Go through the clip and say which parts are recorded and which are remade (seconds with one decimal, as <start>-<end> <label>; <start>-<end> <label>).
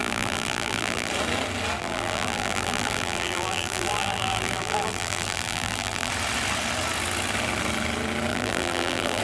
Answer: 0.0-1.1 remade; 1.1-1.8 recorded; 1.8-6.1 remade; 6.1-8.3 recorded; 8.3-9.2 remade